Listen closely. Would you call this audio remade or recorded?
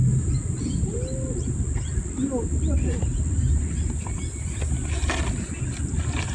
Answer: recorded